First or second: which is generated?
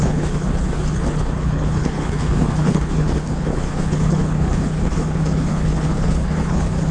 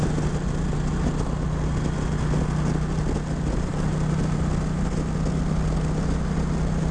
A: first